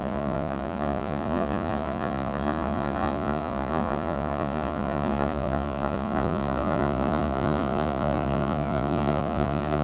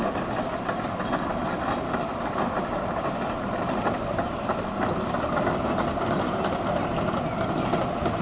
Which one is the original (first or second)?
second